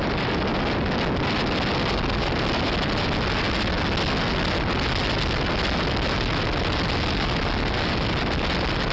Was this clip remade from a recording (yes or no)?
no